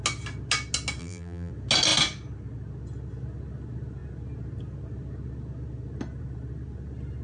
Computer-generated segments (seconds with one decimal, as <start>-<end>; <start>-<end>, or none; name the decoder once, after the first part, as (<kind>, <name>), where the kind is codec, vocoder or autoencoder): 1.0-1.5 (vocoder, BigVGAN v2)